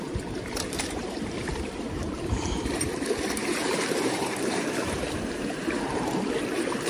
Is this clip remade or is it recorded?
remade